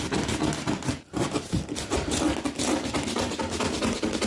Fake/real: real